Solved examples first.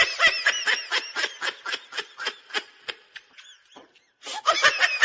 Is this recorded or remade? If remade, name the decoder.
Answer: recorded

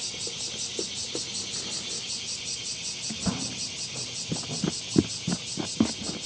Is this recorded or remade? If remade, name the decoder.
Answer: recorded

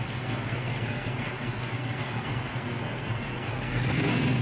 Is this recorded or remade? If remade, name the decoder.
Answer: remade, codec, SNAC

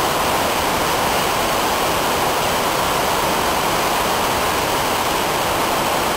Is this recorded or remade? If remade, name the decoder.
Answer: recorded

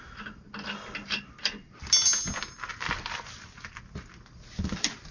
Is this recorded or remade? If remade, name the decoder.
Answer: recorded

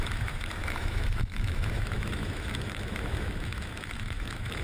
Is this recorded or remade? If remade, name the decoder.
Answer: remade, autoencoder, DAC-VAE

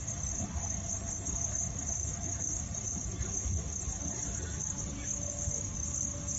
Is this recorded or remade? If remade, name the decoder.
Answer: recorded